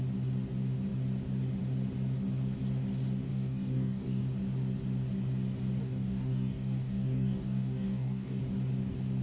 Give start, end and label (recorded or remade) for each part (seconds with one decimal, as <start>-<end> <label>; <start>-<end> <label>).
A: 0.0-3.3 recorded; 3.3-4.2 remade; 4.2-5.8 recorded; 5.8-8.4 remade; 8.4-9.2 recorded